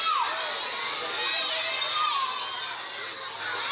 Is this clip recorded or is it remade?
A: recorded